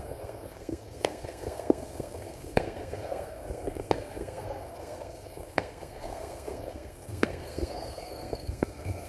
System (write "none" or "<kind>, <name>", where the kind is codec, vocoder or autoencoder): codec, SNAC